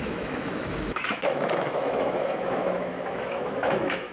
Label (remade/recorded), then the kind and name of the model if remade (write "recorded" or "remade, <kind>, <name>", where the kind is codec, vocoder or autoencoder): remade, autoencoder, DAC-VAE